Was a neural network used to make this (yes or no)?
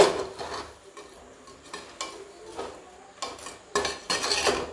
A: no